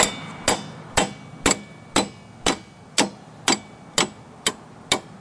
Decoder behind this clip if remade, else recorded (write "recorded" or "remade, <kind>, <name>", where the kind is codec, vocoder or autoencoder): recorded